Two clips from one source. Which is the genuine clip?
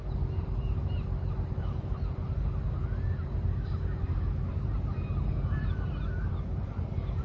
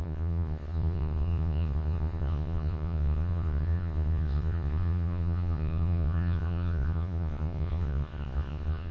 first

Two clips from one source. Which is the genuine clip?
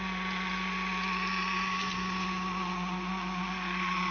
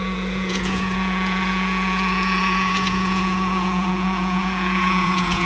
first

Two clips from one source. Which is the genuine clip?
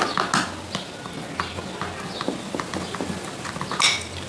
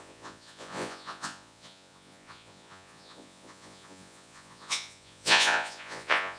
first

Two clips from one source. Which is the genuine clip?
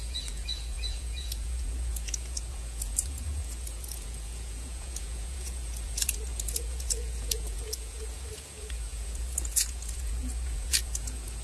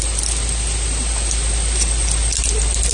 second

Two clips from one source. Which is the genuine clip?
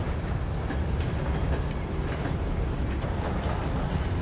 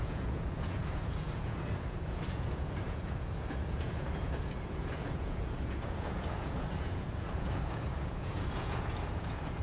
first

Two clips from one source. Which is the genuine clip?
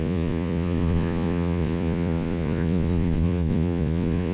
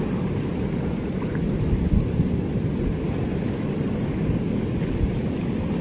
second